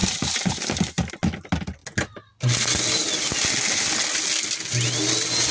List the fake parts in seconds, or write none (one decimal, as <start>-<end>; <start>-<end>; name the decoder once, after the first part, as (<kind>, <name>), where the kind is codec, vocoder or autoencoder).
0.0-1.1 (vocoder, BigVGAN v2)